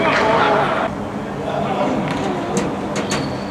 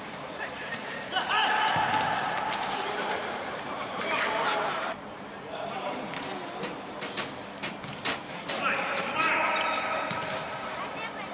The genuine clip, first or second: first